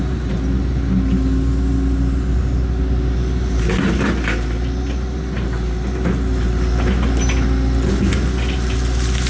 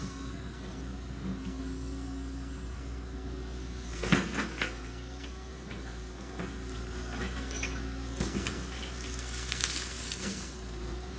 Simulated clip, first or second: second